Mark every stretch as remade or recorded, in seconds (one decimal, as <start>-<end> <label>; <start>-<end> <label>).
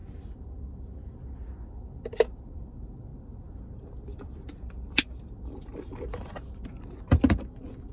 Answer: 0.0-2.4 recorded; 2.4-7.9 remade